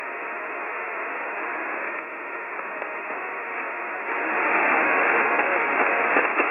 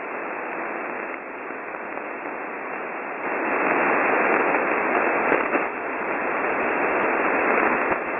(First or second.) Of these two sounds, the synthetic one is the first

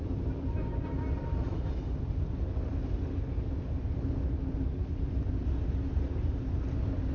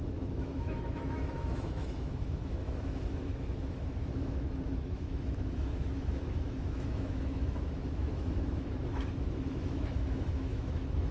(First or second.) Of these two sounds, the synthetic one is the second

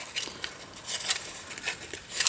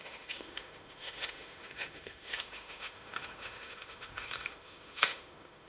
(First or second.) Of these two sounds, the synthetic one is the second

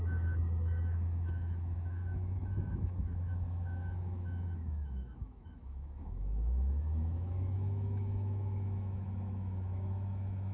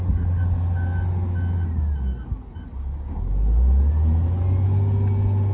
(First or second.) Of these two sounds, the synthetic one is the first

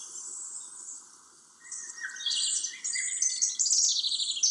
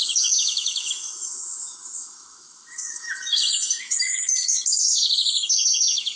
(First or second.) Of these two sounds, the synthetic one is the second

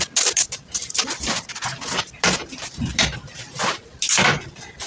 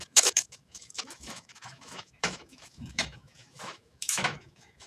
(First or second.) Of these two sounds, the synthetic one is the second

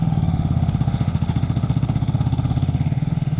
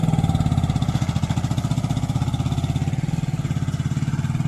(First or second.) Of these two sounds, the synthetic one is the first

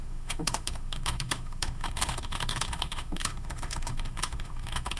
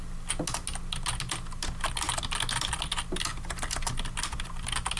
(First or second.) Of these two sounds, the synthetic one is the first